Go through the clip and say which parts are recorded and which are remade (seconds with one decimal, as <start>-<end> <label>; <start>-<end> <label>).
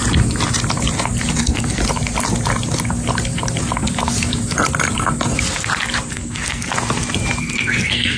0.0-1.4 recorded; 1.4-1.8 remade; 1.8-6.1 recorded; 6.1-6.7 remade; 6.7-7.4 recorded; 7.4-8.2 remade